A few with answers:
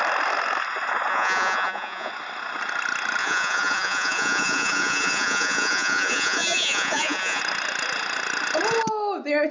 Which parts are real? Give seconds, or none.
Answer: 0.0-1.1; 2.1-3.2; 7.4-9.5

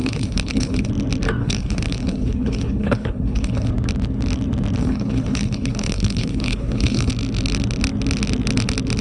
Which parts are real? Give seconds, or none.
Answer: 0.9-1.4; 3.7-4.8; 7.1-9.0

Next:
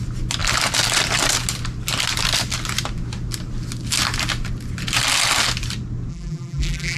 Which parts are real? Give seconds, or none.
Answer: 0.0-6.1

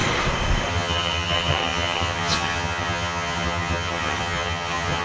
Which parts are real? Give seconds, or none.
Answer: 0.0-0.7

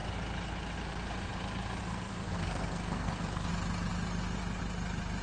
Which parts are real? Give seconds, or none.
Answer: 0.0-1.8; 3.5-5.2

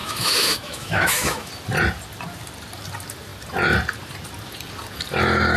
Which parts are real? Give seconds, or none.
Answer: 1.5-5.6